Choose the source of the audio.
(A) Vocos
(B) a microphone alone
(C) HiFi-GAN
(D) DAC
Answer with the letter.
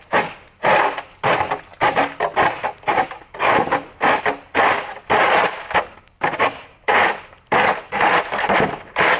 B